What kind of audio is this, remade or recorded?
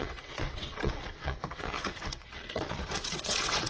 remade